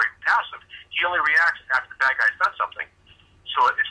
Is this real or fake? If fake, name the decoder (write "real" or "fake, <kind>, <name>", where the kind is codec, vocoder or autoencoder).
real